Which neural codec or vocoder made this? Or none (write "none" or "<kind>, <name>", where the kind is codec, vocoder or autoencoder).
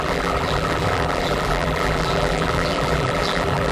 vocoder, BigVGAN v2